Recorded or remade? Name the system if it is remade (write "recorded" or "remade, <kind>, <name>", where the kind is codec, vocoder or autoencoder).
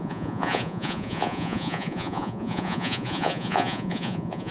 remade, vocoder, Vocos